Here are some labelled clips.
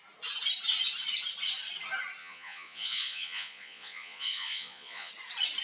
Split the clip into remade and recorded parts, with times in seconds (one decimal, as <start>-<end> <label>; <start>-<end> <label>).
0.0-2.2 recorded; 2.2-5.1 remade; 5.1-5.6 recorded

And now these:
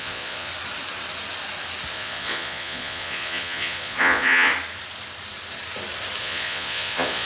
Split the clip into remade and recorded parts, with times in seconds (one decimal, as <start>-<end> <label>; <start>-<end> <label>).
0.0-0.5 remade; 0.5-1.9 recorded; 1.9-4.5 remade; 4.5-6.2 recorded; 6.2-7.3 remade

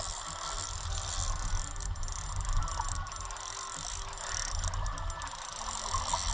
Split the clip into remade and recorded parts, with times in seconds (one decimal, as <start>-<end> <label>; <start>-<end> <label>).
0.0-6.3 recorded